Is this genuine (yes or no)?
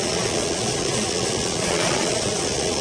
no